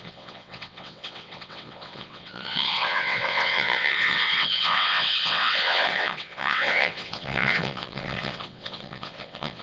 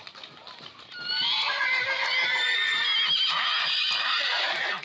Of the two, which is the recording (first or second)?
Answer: second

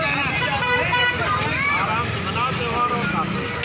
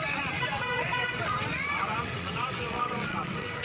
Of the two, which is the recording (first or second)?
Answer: first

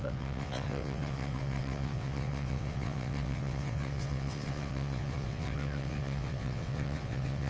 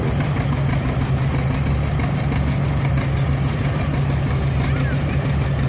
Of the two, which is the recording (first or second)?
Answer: second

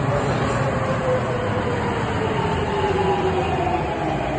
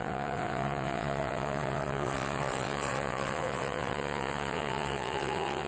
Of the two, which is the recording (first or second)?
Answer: first